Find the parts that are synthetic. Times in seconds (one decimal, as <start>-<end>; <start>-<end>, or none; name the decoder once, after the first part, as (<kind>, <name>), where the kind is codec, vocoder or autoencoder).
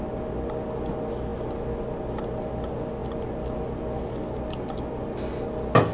none